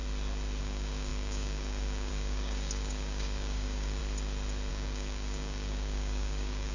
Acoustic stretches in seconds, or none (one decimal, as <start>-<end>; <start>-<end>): 0.0-0.6; 4.0-4.7